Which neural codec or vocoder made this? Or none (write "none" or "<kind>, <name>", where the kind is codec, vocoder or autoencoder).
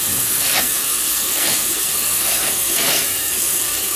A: codec, SNAC